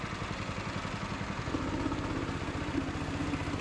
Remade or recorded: recorded